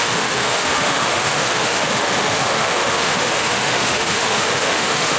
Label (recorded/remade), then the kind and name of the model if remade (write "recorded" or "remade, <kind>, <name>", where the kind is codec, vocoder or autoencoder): remade, autoencoder, DAC-VAE